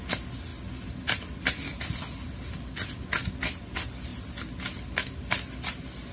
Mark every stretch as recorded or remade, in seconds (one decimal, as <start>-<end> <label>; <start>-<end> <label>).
0.0-6.1 recorded